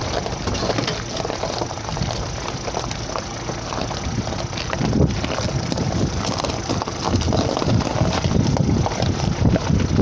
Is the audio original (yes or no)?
yes